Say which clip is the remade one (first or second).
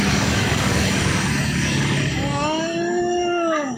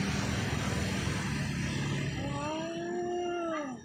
first